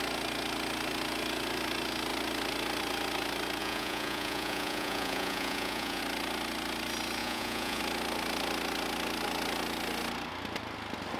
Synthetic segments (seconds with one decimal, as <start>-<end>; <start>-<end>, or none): 3.6-6.0; 7.2-7.8

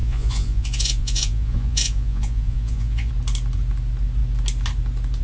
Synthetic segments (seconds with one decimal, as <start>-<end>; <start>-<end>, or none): 0.0-3.1

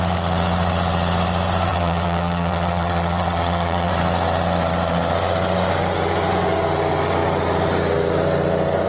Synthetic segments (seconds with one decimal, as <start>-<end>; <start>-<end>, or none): 1.7-3.9

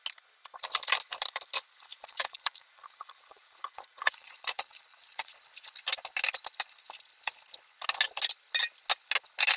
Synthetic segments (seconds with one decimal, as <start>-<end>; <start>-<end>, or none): 1.9-5.5

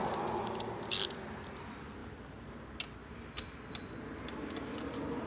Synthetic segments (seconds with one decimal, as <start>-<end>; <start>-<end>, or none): none

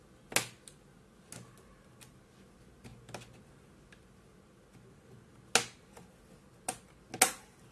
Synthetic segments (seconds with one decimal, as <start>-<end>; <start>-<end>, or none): none

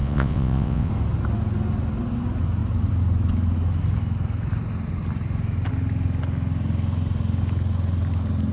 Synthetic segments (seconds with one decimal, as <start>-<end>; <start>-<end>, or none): 0.0-0.9

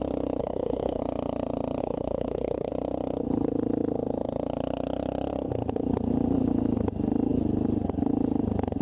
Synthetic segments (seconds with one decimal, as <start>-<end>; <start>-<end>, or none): 0.4-1.0; 1.8-2.7